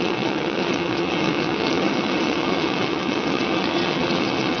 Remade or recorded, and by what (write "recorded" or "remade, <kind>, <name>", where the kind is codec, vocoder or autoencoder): remade, vocoder, WaveNeXt